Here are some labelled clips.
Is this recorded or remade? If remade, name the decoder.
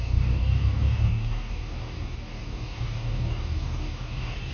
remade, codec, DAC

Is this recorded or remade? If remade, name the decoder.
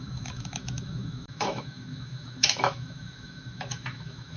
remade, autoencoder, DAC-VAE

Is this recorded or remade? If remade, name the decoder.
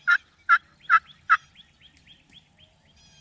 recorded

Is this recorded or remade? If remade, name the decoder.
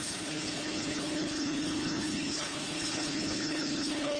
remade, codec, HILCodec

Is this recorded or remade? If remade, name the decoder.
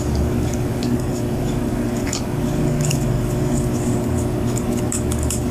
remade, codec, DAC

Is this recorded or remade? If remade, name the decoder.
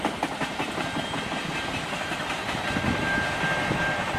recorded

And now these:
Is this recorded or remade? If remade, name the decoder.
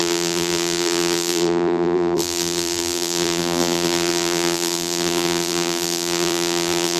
remade, vocoder, BigVGAN v2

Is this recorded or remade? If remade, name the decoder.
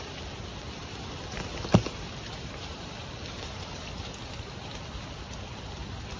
recorded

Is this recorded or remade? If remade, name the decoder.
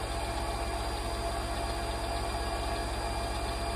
recorded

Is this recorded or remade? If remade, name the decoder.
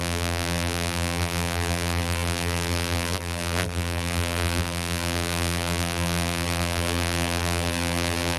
remade, vocoder, BigVGAN v2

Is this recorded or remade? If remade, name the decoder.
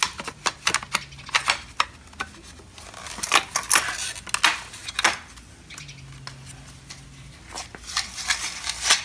recorded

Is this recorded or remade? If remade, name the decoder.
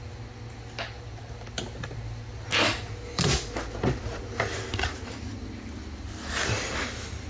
recorded